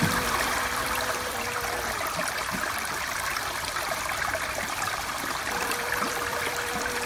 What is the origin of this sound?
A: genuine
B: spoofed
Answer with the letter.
B